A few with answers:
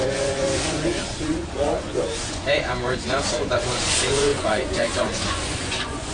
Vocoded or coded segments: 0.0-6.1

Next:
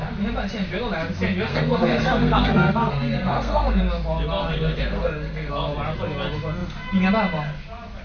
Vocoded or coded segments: 1.5-3.8; 4.4-5.5

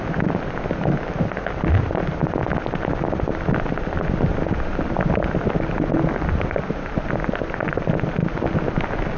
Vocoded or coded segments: none

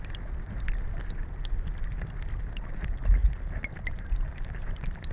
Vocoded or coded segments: none

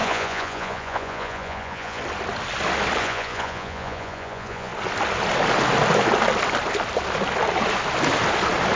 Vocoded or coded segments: 0.0-2.0; 3.0-4.7

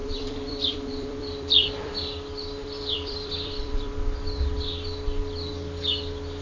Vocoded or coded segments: 0.0-1.9; 2.6-3.9

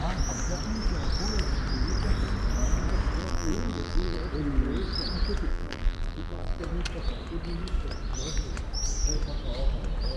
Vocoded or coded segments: 3.2-4.2; 5.5-6.6